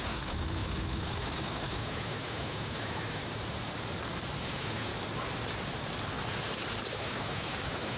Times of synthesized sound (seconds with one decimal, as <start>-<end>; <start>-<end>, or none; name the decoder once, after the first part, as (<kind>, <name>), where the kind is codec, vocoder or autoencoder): 0.0-3.2 (autoencoder, DAC-VAE); 4.4-4.9; 6.9-8.0